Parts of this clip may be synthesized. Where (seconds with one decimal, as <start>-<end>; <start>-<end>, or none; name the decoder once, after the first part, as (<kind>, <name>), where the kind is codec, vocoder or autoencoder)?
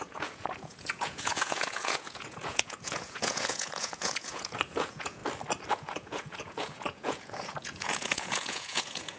0.0-5.2 (vocoder, Vocos); 5.7-9.2